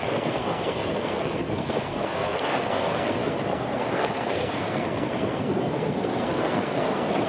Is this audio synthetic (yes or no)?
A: yes